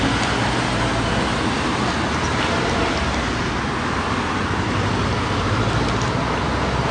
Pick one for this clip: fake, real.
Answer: real